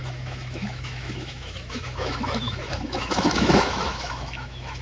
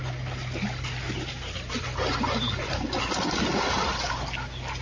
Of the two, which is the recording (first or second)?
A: second